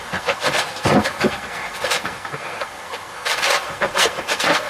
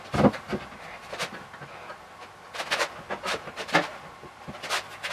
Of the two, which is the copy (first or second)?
first